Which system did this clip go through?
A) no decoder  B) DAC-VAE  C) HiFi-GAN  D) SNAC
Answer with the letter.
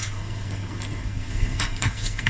D